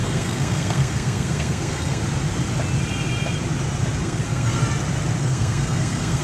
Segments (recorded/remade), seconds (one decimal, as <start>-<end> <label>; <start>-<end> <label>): 0.0-2.0 remade; 2.0-4.0 recorded; 4.0-4.6 remade; 4.6-5.2 recorded; 5.2-6.2 remade